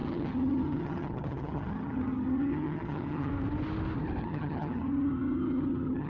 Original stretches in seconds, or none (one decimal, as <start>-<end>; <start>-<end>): 3.3-4.2